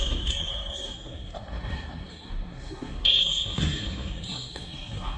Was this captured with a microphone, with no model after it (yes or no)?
no